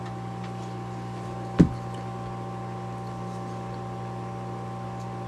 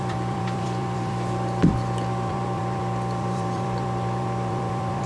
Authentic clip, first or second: first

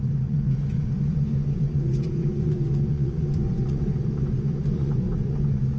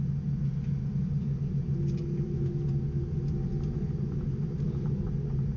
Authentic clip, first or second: second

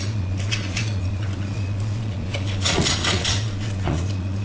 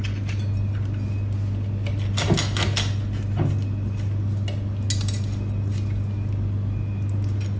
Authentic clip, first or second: second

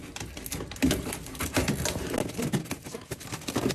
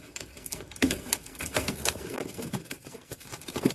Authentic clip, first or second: first